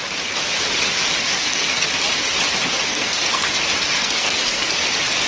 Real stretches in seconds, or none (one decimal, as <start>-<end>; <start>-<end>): 0.0-1.2; 1.9-2.9; 3.5-4.0; 4.8-5.3